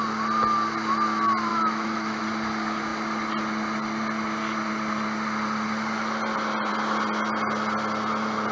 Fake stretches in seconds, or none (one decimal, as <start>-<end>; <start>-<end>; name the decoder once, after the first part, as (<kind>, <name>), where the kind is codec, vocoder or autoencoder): 1.5-2.2 (autoencoder, DAC-VAE)

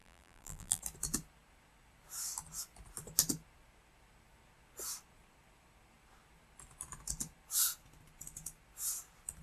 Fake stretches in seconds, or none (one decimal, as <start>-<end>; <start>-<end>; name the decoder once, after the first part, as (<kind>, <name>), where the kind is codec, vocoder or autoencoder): 0.0-0.8 (vocoder, BigVGAN v2)

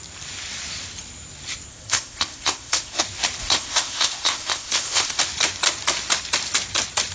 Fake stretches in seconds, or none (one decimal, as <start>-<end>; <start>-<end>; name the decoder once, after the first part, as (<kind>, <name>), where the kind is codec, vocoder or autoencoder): 1.7-3.0 (codec, ZipCodec); 3.4-5.2

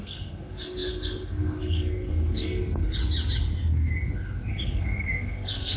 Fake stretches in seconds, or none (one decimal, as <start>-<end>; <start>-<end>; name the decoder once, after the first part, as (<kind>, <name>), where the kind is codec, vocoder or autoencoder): 0.0-3.0 (codec, SNAC); 4.5-5.8

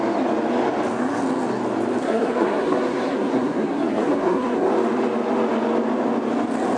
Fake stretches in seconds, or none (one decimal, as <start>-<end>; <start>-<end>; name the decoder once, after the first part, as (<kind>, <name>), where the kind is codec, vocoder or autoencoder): 2.0-4.7 (codec, SNAC)

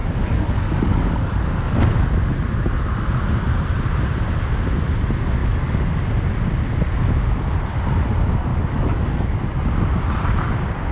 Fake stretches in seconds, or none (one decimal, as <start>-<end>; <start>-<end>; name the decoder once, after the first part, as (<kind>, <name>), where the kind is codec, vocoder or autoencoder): 0.0-1.8 (codec, DAC); 5.4-6.0; 8.5-9.4